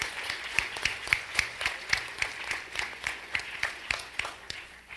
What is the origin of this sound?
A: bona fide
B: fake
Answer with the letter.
B